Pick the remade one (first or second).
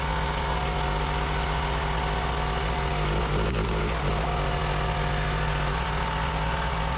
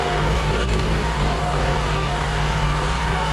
second